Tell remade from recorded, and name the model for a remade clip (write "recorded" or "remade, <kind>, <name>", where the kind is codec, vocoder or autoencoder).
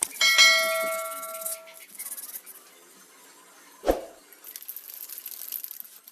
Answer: recorded